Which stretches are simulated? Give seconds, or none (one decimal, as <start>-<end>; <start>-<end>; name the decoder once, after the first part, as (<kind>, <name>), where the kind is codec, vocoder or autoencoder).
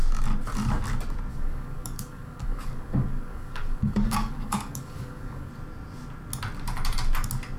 1.3-5.5 (codec, DAC)